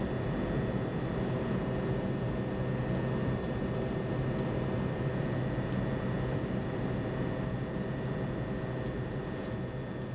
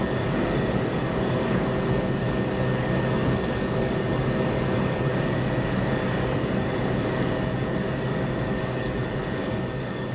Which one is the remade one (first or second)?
second